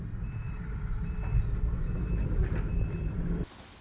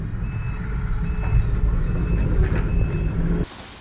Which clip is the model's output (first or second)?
first